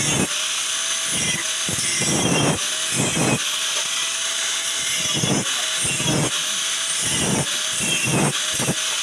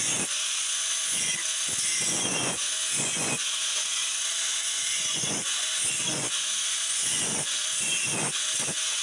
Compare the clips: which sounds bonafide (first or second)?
first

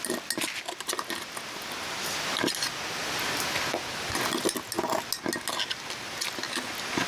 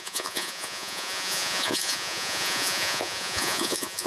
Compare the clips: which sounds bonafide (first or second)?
first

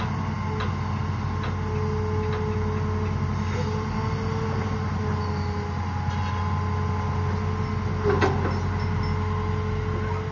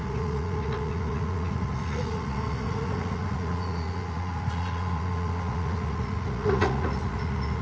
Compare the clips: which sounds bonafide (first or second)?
first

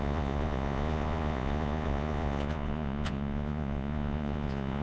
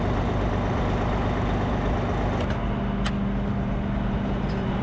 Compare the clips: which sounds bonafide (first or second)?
second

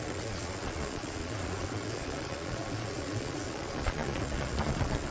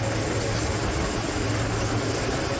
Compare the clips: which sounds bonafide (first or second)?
second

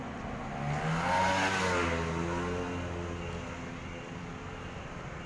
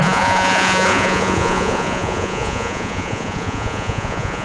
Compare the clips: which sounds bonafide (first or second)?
first